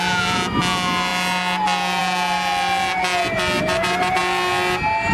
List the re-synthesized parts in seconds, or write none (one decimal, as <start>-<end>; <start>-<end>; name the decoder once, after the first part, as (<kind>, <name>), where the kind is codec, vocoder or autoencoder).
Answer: none